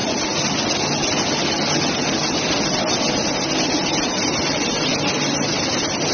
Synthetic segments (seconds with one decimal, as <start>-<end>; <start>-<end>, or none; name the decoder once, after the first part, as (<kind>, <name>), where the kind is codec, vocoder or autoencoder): none